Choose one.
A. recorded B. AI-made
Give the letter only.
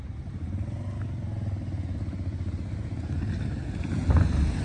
A